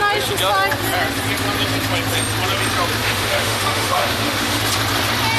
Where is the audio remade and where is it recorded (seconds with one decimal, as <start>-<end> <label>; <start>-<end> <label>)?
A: 0.0-3.0 recorded; 3.0-4.6 remade; 4.6-5.4 recorded